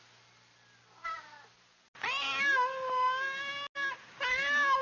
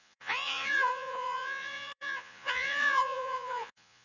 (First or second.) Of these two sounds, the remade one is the second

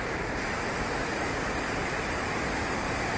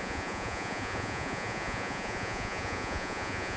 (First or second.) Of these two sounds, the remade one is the second